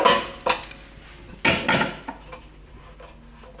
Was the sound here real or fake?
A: real